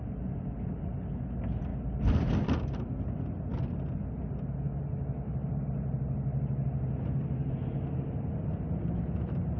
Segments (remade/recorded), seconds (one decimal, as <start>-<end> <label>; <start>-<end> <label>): 0.0-9.6 recorded